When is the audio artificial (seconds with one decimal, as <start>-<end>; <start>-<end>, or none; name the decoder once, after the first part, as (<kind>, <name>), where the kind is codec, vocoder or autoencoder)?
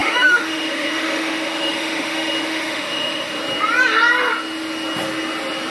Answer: 0.0-3.4 (autoencoder, DAC-VAE)